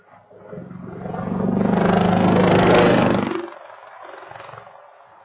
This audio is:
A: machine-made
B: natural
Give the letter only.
B